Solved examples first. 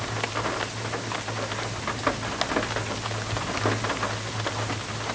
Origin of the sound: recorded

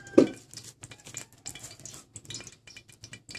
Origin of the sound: recorded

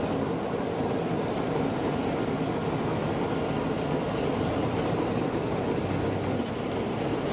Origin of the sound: recorded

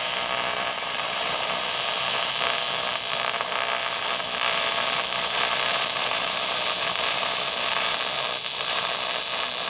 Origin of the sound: remade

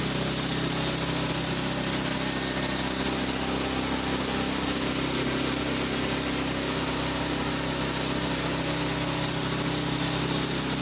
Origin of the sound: recorded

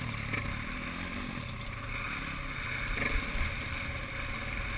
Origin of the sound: recorded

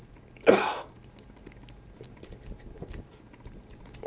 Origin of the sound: recorded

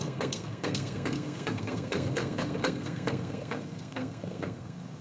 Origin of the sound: remade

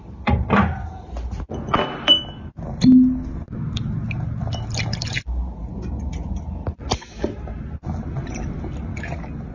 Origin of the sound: recorded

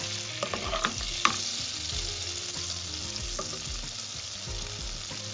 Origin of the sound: recorded